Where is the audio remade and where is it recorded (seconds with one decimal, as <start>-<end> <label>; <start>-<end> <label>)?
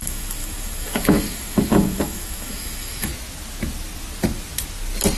0.0-3.1 remade; 3.1-5.2 recorded